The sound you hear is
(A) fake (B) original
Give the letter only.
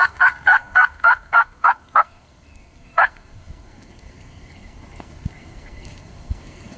A